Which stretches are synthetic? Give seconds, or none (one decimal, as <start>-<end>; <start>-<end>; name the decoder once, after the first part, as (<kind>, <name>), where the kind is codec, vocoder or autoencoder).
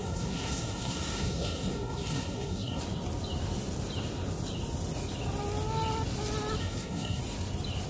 0.0-2.8 (codec, SNAC); 6.6-7.2